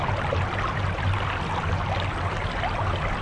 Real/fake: real